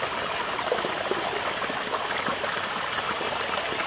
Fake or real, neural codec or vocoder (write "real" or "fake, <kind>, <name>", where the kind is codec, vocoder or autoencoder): real